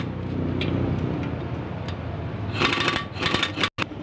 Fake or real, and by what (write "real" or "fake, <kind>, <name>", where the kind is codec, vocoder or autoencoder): real